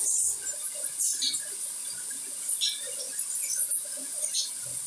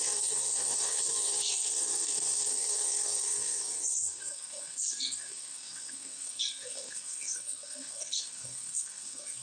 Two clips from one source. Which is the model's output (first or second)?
second